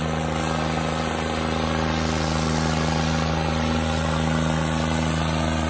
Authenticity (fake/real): real